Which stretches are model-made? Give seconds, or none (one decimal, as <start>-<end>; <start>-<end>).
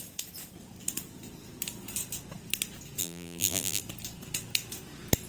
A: 3.0-3.8